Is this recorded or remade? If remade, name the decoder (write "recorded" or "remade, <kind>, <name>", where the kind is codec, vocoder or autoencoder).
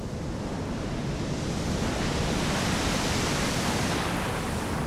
recorded